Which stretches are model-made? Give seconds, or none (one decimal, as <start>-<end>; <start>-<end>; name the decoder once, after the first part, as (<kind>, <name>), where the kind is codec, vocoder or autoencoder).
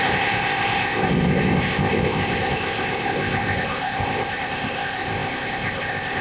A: 0.0-6.2 (codec, ZipCodec)